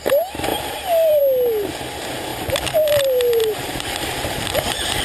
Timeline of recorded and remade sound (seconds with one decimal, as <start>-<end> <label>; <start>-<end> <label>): 0.0-0.5 recorded; 0.5-1.2 remade; 1.2-2.3 recorded; 2.3-2.9 remade; 2.9-3.4 recorded; 3.4-5.0 remade